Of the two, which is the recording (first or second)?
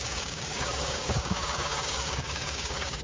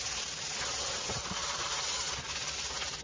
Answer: second